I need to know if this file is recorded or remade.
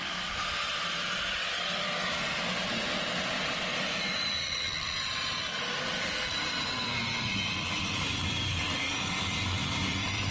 remade